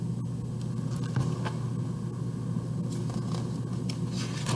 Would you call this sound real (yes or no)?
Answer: yes